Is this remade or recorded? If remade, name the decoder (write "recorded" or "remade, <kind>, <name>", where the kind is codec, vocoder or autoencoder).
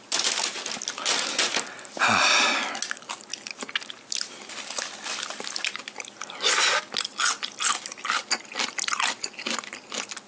recorded